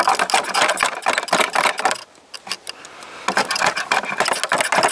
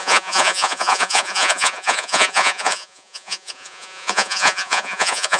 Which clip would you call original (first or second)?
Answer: first